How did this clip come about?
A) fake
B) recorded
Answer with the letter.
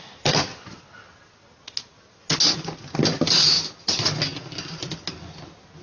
B